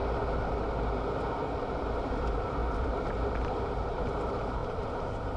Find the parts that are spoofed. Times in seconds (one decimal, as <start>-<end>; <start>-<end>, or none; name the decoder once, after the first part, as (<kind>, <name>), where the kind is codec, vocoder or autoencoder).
1.8-5.4 (vocoder, BigVGAN v2)